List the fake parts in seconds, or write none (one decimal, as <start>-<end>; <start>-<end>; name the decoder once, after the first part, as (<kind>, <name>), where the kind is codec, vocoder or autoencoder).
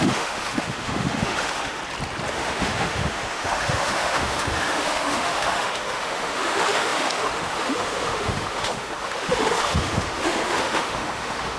0.0-1.8 (autoencoder, DAC-VAE); 2.3-11.6